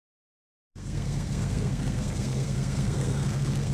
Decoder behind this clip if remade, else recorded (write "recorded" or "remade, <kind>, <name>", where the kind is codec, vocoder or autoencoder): remade, codec, SNAC